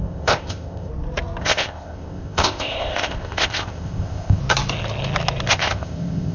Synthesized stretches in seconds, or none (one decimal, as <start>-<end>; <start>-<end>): 0.0-0.9; 1.4-4.4; 5.5-6.3